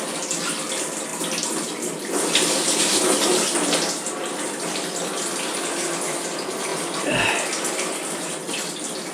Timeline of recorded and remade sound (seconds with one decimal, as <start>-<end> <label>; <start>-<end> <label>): 0.0-6.7 recorded; 6.7-7.4 remade; 7.4-9.1 recorded